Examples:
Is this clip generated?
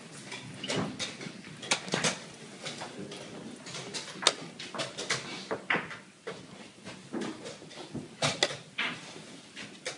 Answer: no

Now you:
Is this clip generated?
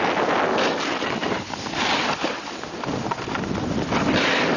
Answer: no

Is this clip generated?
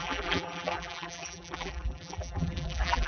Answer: yes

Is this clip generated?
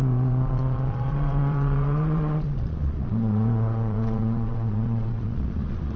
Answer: yes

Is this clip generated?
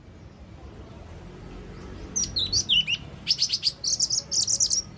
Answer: no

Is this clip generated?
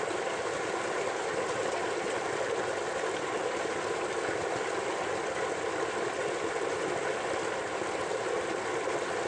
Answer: no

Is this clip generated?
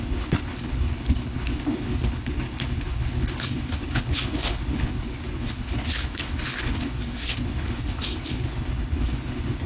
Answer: yes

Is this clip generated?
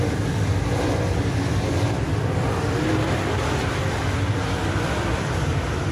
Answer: yes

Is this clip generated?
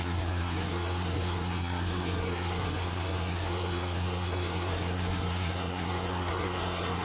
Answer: yes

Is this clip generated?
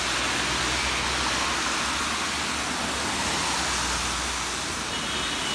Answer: no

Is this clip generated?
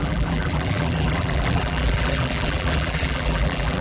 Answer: yes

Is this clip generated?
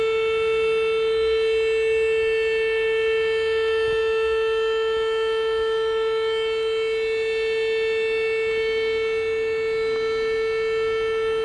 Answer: no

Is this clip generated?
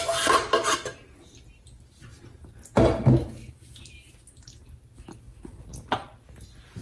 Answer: no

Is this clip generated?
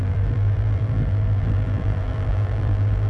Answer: yes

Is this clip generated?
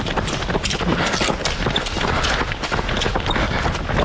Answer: no